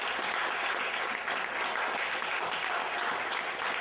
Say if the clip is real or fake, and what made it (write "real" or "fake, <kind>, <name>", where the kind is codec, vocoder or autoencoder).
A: real